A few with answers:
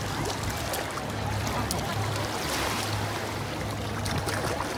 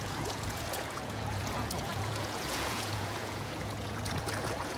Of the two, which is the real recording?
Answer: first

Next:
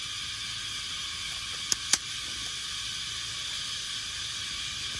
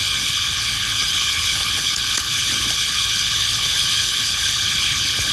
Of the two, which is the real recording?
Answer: first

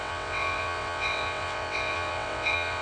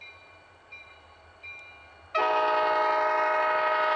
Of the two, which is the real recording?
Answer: second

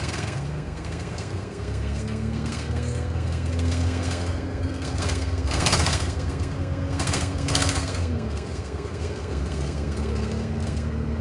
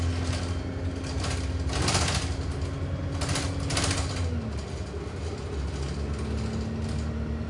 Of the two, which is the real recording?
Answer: second